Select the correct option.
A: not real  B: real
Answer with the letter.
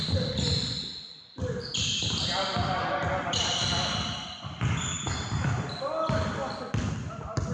B